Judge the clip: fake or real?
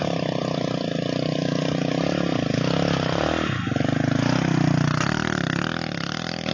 real